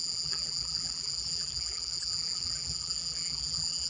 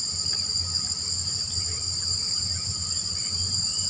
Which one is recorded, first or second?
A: second